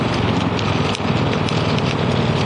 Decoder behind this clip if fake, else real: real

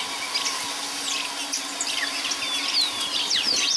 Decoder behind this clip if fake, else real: real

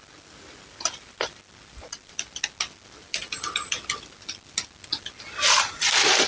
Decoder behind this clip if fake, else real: real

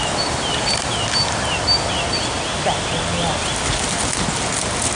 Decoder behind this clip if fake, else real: real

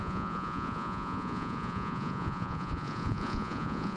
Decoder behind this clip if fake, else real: fake, vocoder, Vocos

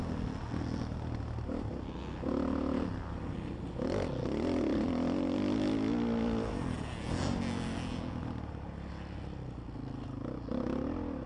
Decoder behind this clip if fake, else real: real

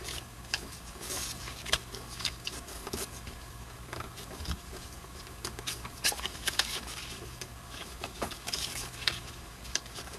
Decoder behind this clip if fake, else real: fake, codec, DAC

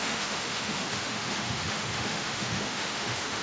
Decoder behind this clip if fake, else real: fake, autoencoder, DAC-VAE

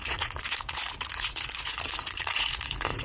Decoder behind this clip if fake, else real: fake, vocoder, Vocos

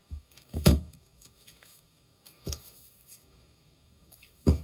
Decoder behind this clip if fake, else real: fake, codec, DAC